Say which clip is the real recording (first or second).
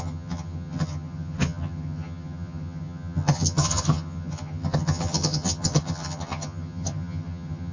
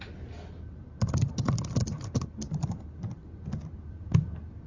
second